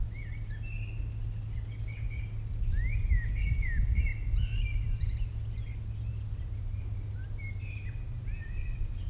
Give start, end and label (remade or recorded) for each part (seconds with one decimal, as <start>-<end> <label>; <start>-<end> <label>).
0.0-9.1 recorded